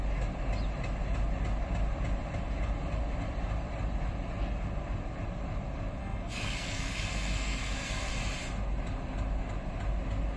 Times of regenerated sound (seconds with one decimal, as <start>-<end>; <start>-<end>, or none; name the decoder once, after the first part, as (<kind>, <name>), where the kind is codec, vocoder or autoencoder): 6.0-8.1 (codec, SNAC)